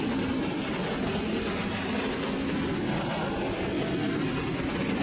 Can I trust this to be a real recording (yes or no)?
yes